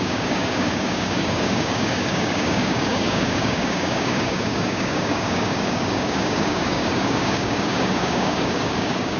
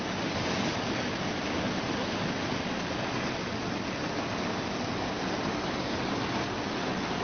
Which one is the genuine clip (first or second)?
second